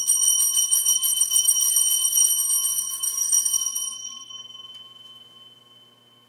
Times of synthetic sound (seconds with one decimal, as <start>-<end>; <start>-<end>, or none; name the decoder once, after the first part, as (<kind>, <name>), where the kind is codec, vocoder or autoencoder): 0.6-2.3 (codec, SNAC); 2.7-4.3